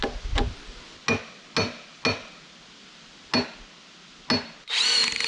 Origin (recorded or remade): recorded